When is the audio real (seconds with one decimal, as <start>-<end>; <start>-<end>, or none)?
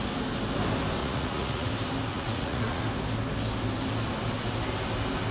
0.0-1.0; 1.7-2.1; 2.8-5.3